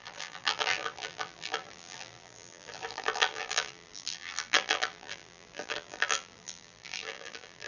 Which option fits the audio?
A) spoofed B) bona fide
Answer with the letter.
A